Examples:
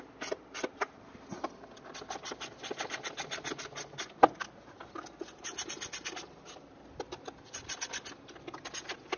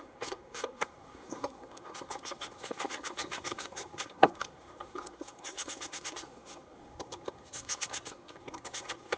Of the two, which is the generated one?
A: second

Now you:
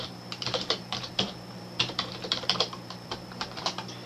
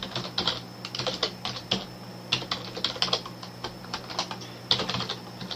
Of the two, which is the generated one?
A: first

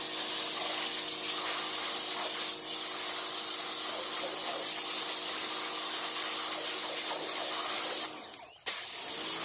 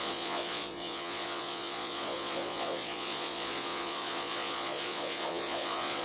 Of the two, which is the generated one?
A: second